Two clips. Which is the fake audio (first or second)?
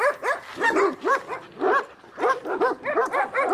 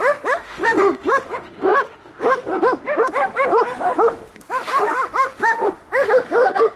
second